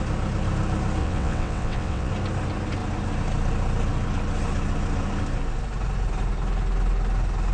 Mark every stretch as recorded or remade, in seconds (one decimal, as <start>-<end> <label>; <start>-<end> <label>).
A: 0.0-1.0 recorded; 1.0-2.1 remade; 2.1-7.5 recorded